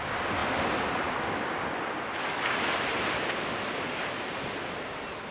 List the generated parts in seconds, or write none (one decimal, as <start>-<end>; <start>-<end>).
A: none